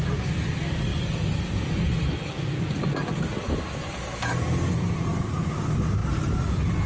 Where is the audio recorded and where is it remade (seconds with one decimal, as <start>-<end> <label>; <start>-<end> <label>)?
0.0-0.9 remade; 0.9-4.7 recorded; 4.7-6.0 remade; 6.0-6.9 recorded